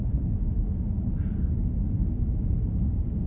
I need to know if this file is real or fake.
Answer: real